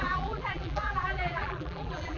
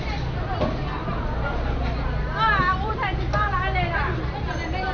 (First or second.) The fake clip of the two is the first